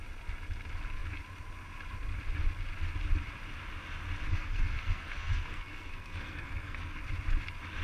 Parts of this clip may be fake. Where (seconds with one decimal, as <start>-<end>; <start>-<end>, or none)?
4.3-7.0